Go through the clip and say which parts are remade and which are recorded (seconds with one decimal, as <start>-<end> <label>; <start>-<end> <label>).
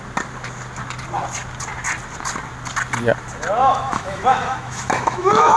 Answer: 0.0-3.6 recorded; 3.6-5.6 remade